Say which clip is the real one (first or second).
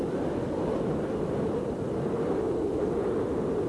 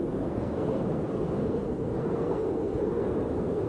first